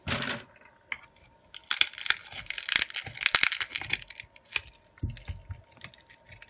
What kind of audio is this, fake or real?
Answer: real